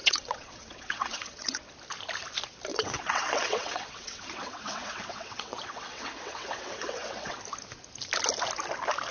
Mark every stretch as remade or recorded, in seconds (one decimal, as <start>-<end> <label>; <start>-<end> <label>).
0.0-1.7 remade; 1.7-2.7 recorded; 2.7-7.4 remade; 7.4-9.1 recorded